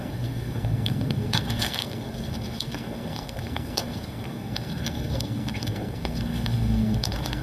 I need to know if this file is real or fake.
fake